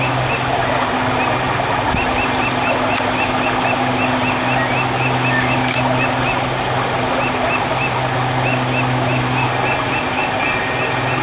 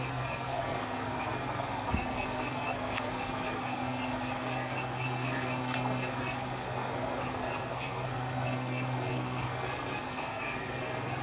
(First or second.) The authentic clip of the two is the first